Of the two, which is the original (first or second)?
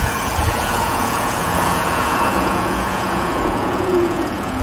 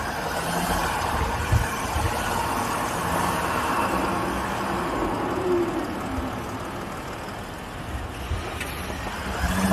second